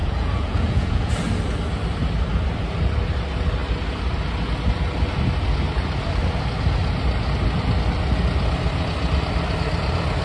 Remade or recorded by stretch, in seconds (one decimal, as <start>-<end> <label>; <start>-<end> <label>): 0.0-1.1 remade; 1.1-10.2 recorded